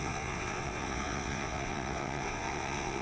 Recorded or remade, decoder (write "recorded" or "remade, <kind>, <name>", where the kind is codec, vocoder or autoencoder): remade, vocoder, WaveNeXt